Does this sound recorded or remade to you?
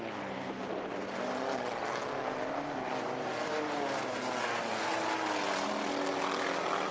recorded